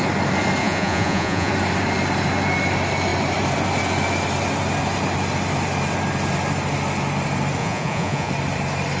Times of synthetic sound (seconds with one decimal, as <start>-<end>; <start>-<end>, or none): 0.6-1.5; 7.6-8.3